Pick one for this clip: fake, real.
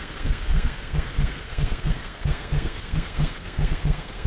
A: fake